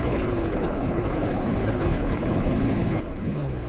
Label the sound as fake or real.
fake